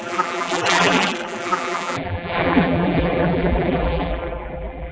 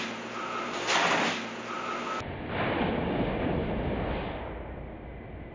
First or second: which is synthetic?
first